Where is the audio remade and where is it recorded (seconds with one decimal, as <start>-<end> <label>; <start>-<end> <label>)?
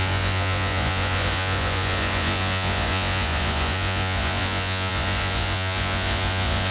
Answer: 0.0-6.7 remade